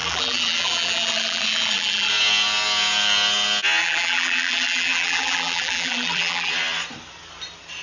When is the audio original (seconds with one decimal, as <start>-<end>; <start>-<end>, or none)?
2.1-3.8; 6.5-7.8